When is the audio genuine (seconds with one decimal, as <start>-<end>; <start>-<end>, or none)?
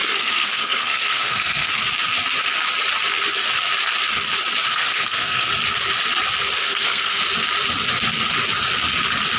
1.7-4.7; 5.5-6.6; 7.2-9.4